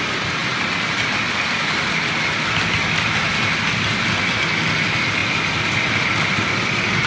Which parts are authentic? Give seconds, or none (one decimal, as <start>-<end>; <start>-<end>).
0.0-7.1

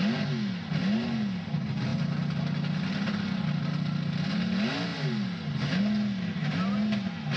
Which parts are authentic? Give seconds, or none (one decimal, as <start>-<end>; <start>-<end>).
0.0-7.4

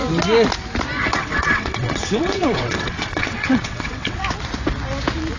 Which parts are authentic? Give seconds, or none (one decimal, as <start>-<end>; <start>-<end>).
0.0-1.0; 4.2-5.4

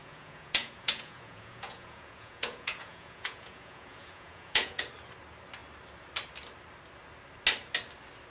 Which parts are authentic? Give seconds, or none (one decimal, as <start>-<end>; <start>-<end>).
4.8-8.3

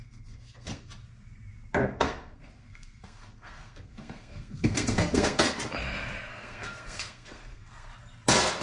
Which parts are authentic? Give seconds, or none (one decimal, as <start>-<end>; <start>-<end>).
0.9-1.8; 5.6-6.3; 7.9-8.6

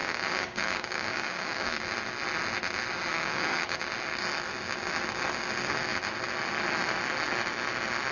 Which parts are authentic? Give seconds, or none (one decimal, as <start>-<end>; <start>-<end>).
1.8-3.1; 3.8-8.1

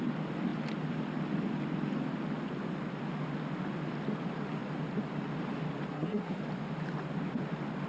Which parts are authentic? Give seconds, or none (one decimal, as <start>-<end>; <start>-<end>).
0.0-5.9; 6.4-7.9

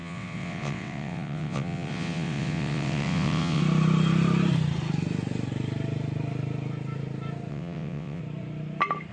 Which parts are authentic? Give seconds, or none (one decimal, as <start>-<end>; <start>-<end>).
3.6-7.5; 8.2-9.1